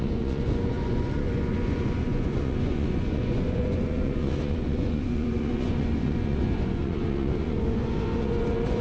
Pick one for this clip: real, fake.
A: fake